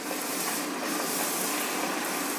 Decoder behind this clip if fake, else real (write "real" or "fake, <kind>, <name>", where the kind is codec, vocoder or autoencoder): real